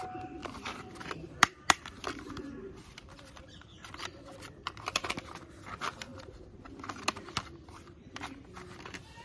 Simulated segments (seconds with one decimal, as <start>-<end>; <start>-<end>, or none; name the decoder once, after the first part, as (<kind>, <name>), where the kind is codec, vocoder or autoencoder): 0.4-5.1 (vocoder, BigVGAN v2)